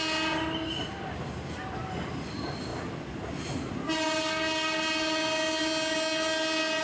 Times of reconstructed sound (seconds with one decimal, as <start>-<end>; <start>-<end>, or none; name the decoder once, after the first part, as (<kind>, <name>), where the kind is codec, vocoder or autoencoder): none